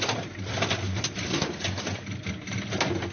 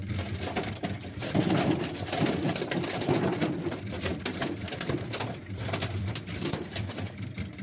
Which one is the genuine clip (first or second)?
first